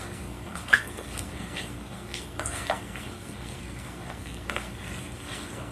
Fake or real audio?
fake